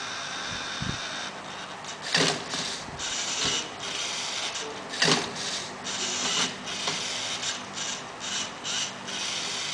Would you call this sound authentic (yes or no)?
yes